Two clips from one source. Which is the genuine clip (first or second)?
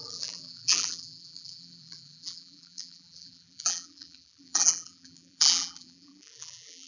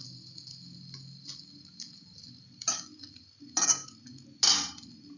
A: second